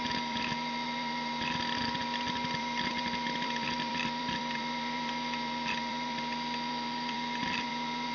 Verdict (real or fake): fake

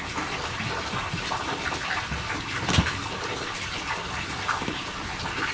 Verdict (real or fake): real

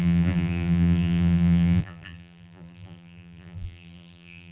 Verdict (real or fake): fake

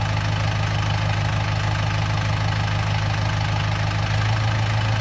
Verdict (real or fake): real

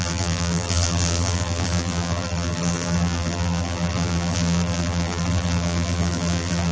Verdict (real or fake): fake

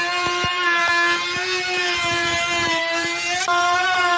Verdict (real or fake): fake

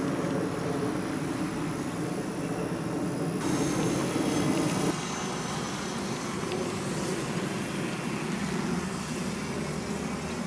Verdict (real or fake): real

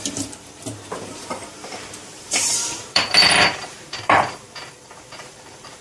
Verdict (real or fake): fake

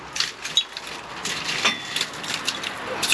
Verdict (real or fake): real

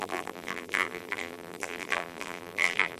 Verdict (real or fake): fake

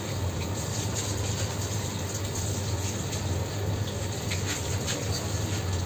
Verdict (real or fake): real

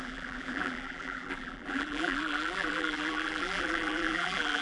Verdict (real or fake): fake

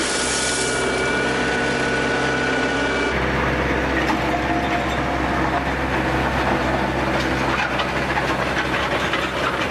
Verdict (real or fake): real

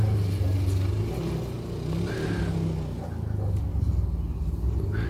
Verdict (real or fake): real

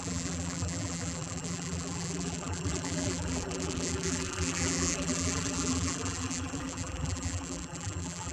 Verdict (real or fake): fake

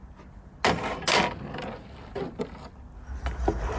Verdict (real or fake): real